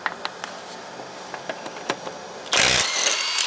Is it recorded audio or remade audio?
recorded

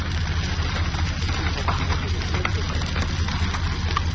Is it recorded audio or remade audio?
recorded